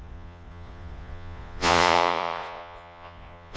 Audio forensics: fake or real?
fake